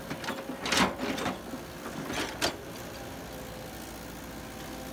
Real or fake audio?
real